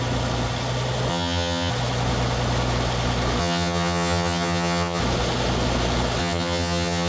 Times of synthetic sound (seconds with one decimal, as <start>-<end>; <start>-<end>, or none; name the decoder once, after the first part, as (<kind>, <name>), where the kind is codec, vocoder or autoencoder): 1.1-1.7 (vocoder, HiFi-GAN); 3.4-5.0; 6.2-7.1

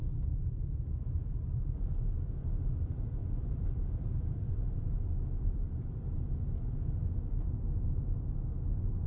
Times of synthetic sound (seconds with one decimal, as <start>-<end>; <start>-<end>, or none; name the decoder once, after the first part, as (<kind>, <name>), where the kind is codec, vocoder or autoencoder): 3.2-6.4 (vocoder, BigVGAN v2)

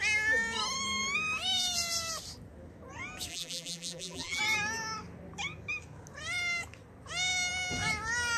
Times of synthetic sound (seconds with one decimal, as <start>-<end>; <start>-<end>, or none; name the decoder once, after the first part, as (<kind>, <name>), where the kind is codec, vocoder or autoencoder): 3.3-4.4 (vocoder, BigVGAN v2)